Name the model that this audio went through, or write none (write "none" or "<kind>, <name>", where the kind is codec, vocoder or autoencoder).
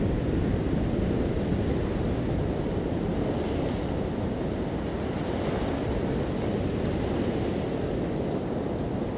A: none